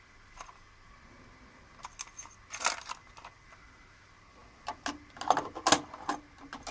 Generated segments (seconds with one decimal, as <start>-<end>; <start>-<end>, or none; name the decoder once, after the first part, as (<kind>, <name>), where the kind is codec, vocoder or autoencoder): none